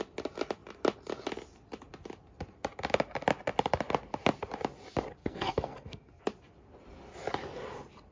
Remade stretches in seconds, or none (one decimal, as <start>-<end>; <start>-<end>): 5.2-6.2